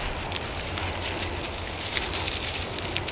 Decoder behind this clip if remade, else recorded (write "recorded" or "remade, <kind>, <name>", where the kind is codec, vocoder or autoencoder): recorded